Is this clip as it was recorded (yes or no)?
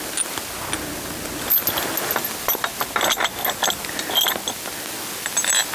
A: yes